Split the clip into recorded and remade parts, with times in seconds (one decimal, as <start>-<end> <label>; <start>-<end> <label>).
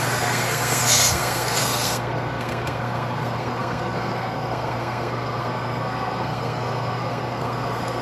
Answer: 0.0-8.0 remade